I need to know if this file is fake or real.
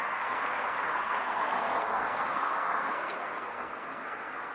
fake